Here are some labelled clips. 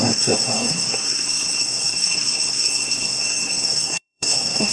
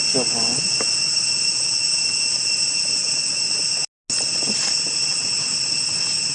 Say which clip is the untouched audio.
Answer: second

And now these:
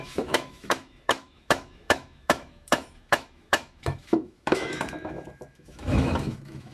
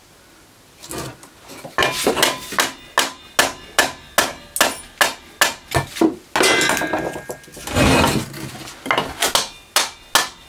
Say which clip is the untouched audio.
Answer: second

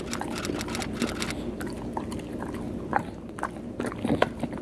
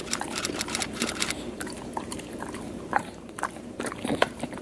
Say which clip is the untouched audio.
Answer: first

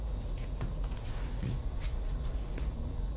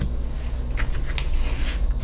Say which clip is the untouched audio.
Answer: second